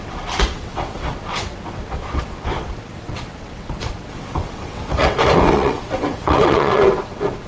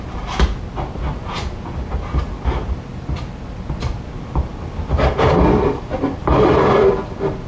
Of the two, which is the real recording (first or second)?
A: second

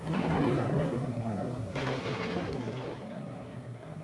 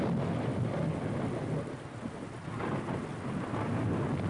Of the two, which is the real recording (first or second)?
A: second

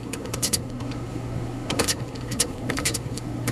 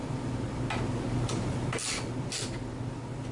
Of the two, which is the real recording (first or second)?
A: second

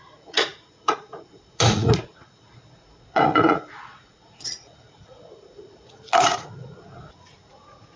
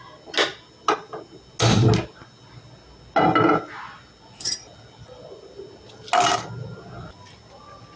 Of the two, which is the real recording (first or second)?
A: second